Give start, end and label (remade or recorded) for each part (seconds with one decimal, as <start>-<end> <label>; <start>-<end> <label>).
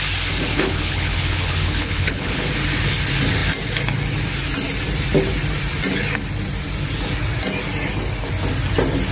0.0-0.5 recorded; 0.5-2.5 remade; 2.5-9.1 recorded